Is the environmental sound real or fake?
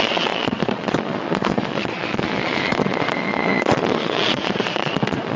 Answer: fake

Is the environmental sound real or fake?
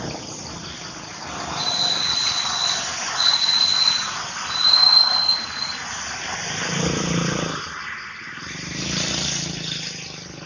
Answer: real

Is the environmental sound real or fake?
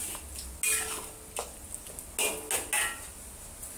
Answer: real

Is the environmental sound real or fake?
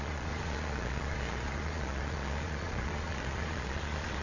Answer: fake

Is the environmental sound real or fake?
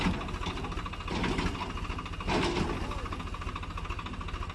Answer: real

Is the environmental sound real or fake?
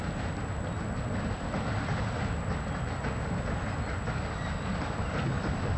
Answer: real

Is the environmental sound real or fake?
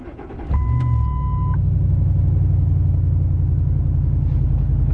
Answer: real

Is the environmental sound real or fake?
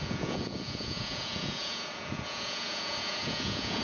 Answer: fake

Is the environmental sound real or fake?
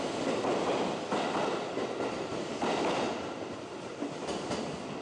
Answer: real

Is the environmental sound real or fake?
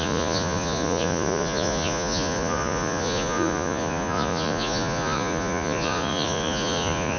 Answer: fake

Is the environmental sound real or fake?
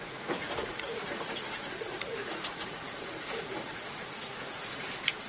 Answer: fake